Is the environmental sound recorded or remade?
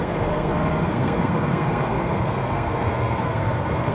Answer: remade